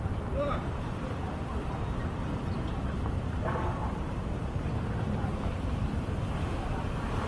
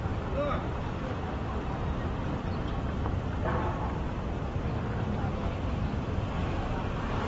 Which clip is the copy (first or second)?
first